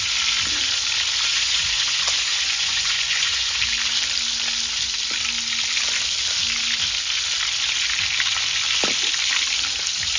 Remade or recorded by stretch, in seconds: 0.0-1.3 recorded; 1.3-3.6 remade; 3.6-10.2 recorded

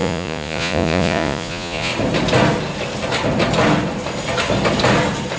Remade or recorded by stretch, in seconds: 0.0-1.9 remade; 1.9-5.4 recorded

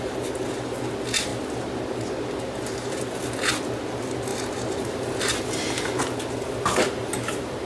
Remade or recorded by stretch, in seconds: 0.0-7.7 recorded

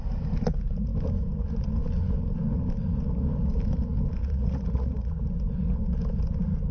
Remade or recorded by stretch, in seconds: 0.0-4.2 recorded; 4.2-5.1 remade; 5.1-6.7 recorded

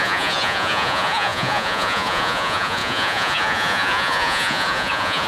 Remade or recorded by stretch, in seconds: 0.0-5.3 remade

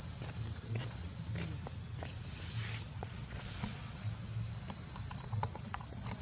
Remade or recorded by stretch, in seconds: 0.0-0.6 recorded; 0.6-1.1 remade; 1.1-3.0 recorded; 3.0-4.1 remade; 4.1-5.1 recorded; 5.1-6.2 remade

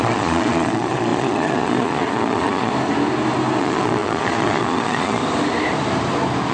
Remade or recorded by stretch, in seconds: 0.0-2.7 remade; 2.7-3.6 recorded; 3.6-5.2 remade; 5.2-6.5 recorded

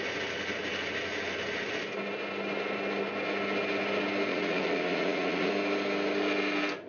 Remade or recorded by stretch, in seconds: 0.0-4.3 recorded; 4.3-5.5 remade; 5.5-6.9 recorded